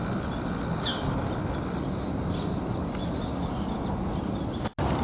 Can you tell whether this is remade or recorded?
recorded